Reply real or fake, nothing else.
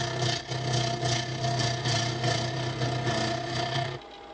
real